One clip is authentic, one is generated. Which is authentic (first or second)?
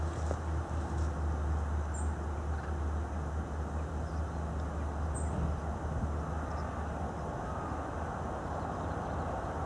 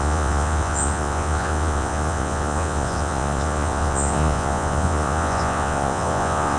first